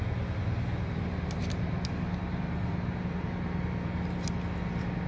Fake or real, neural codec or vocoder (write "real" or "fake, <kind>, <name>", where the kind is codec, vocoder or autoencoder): real